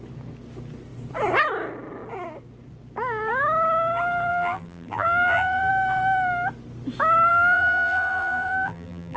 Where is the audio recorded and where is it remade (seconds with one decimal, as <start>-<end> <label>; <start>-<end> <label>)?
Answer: 0.0-4.3 recorded; 4.3-5.7 remade; 5.7-7.3 recorded; 7.3-9.2 remade